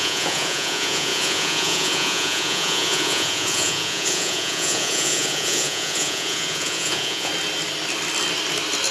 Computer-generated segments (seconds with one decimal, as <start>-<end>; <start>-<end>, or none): 0.0-7.3